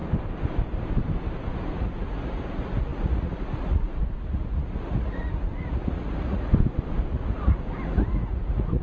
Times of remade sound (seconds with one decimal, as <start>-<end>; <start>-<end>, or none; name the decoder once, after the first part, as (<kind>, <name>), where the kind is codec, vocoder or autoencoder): 1.8-6.5 (vocoder, Vocos); 7.1-8.8